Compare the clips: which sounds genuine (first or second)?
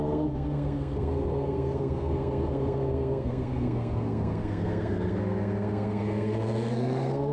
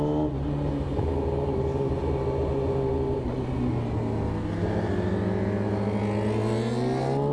second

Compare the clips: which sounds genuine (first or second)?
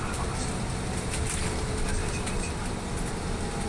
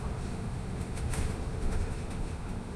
first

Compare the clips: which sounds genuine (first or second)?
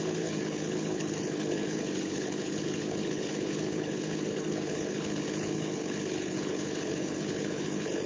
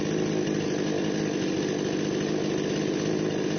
second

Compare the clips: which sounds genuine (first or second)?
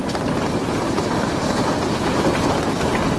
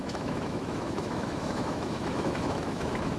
first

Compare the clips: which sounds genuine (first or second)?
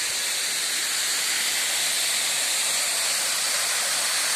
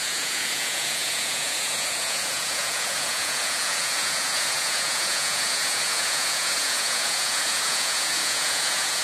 first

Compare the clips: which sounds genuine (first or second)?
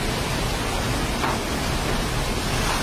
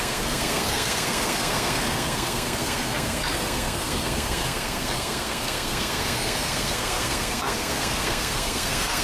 first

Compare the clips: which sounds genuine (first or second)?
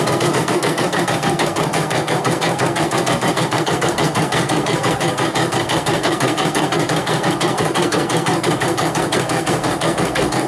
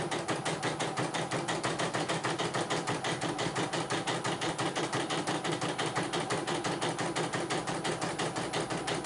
second